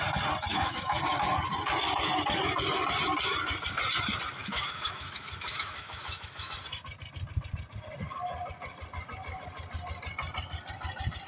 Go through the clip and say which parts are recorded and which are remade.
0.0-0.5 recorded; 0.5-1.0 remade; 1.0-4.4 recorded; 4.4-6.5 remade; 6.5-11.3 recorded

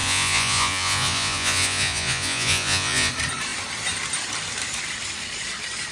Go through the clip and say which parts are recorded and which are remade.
0.0-3.1 remade; 3.1-5.9 recorded

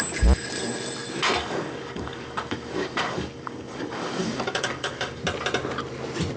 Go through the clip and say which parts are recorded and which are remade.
0.0-1.4 recorded; 1.4-5.2 remade; 5.2-6.4 recorded

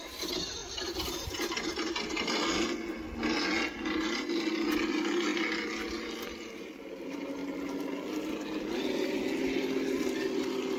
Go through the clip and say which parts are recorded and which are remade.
0.0-10.8 recorded

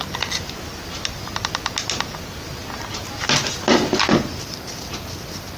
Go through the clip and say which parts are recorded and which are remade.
0.0-5.6 recorded

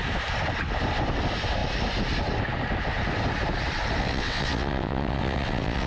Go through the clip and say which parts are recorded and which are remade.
0.0-4.0 recorded; 4.0-5.9 remade

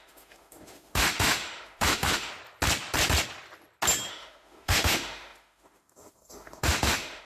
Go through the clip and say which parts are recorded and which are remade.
0.0-2.3 remade; 2.3-4.1 recorded; 4.1-7.2 remade

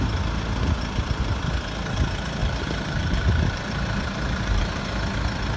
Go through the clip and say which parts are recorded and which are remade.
0.0-2.4 recorded; 2.4-4.8 remade; 4.8-5.6 recorded